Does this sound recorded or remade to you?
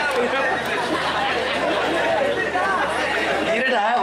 recorded